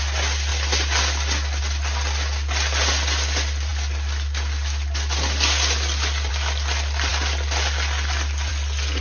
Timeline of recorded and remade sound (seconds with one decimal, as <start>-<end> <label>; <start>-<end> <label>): 0.0-9.0 recorded